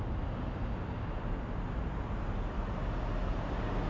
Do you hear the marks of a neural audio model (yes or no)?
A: no